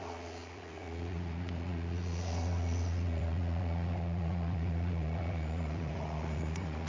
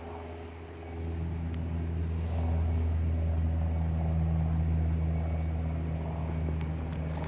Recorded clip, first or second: second